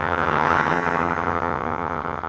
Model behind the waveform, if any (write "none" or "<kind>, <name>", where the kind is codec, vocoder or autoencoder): vocoder, HiFi-GAN